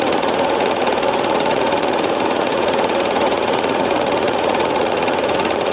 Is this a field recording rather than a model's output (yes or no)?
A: no